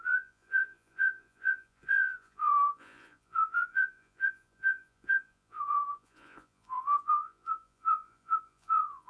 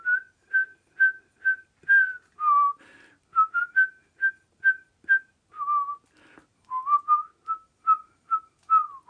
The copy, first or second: first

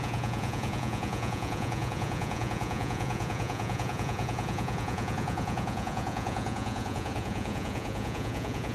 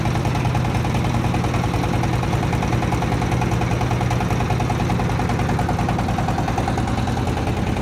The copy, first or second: first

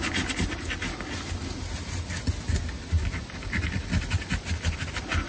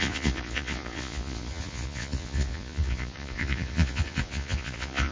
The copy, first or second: second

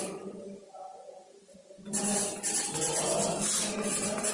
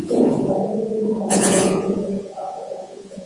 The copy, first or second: second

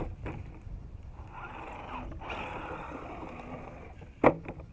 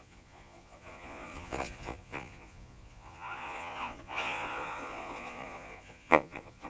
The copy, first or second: second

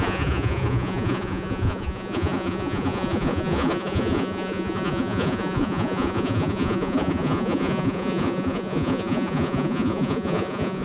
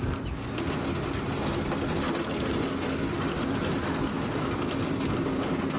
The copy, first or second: first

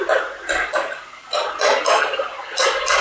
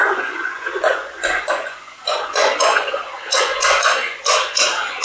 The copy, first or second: second